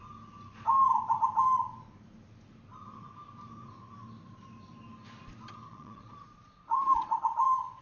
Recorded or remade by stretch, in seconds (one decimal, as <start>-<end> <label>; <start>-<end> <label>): 0.0-5.7 recorded; 5.7-7.8 remade